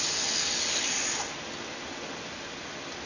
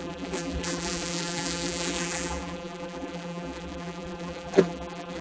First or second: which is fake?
second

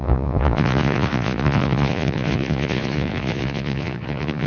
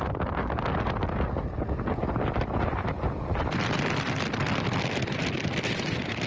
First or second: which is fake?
first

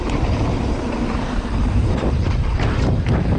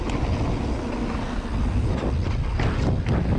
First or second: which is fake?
first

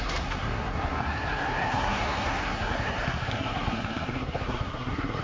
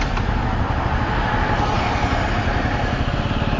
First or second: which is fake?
first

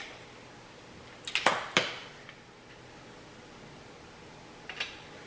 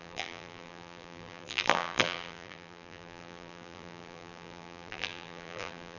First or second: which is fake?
second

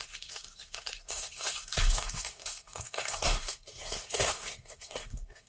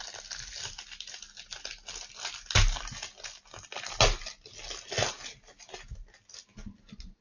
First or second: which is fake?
first